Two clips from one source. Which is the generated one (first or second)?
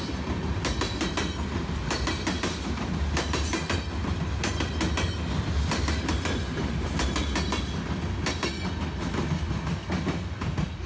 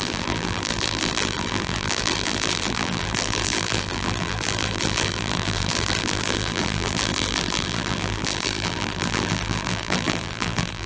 second